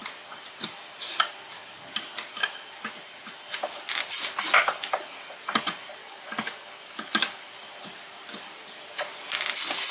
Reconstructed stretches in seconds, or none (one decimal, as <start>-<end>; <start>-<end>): 6.0-7.5